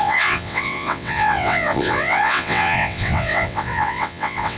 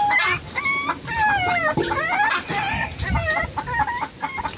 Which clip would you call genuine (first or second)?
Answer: second